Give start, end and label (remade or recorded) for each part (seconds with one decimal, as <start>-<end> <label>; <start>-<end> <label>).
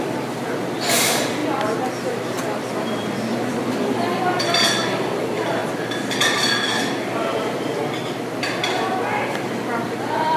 0.0-1.4 remade; 1.4-1.9 recorded; 1.9-5.6 remade; 5.6-7.0 recorded; 7.0-7.8 remade; 7.8-10.0 recorded; 10.0-10.4 remade